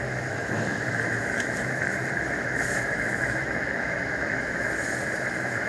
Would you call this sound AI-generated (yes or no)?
yes